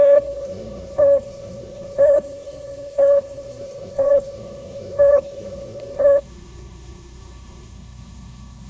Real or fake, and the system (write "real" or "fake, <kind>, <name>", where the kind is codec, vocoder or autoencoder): fake, codec, SNAC